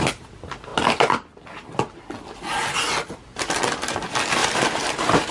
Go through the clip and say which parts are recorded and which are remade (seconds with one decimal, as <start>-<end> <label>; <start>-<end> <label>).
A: 0.0-4.4 recorded; 4.4-5.3 remade